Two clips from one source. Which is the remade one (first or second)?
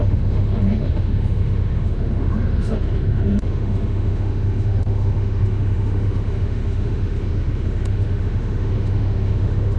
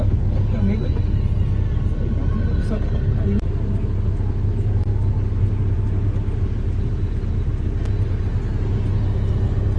first